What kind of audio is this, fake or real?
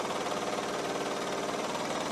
real